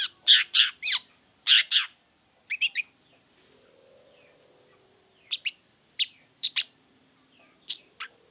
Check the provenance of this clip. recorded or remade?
remade